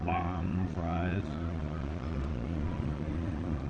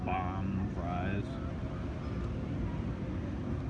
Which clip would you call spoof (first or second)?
first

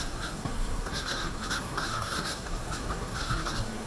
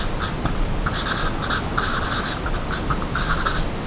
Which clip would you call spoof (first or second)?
first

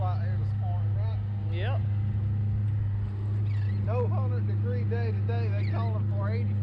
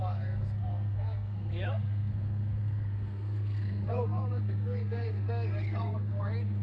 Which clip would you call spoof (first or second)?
second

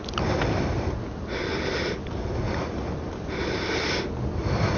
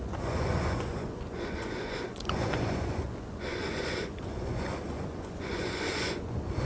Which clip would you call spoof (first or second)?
second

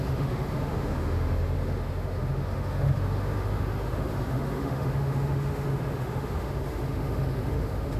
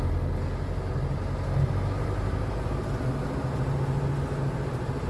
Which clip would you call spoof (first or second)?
first